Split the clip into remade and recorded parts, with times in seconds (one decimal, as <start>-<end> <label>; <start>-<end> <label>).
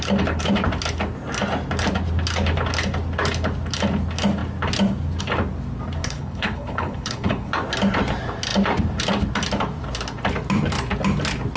0.0-6.0 recorded; 6.0-7.5 remade; 7.5-11.6 recorded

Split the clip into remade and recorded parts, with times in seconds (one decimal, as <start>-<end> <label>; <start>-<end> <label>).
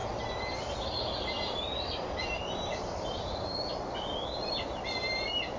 0.0-5.6 recorded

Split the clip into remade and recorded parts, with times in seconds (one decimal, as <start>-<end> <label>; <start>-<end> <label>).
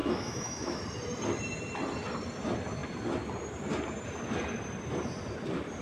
0.0-0.8 remade; 0.8-5.8 recorded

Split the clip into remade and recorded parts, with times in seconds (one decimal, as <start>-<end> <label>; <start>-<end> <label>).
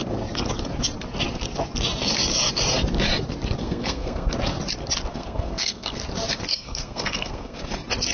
0.0-3.6 recorded; 3.6-4.3 remade; 4.3-5.1 recorded; 5.1-6.0 remade; 6.0-6.5 recorded; 6.5-7.6 remade; 7.6-8.1 recorded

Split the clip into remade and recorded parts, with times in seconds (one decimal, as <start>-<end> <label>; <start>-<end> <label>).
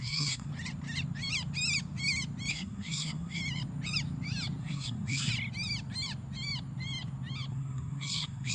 0.0-0.5 remade; 0.5-2.5 recorded; 2.5-3.4 remade; 3.4-4.6 recorded; 4.6-5.3 remade; 5.3-7.5 recorded; 7.5-8.5 remade